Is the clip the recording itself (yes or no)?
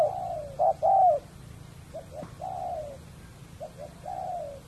yes